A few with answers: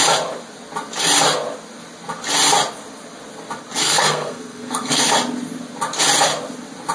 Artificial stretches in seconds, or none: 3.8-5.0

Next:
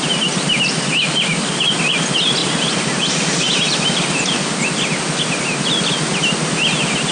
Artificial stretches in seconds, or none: none

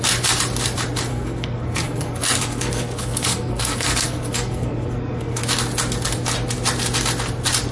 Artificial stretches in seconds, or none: 1.1-5.4

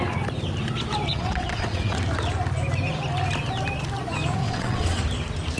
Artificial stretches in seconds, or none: 1.1-2.0; 4.4-5.0

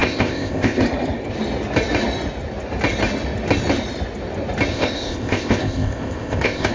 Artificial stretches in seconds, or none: 0.0-0.8; 4.7-6.7

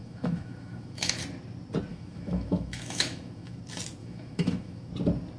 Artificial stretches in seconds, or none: 0.0-1.2; 1.9-3.6; 4.0-4.9